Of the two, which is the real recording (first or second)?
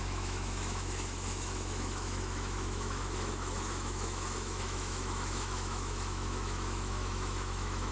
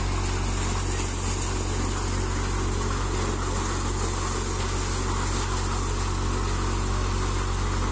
second